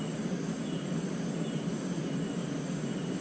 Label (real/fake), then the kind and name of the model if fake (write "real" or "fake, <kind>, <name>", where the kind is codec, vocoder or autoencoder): real